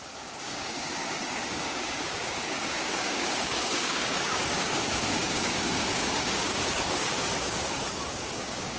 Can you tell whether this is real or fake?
fake